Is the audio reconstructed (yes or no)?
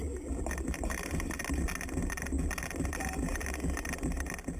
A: no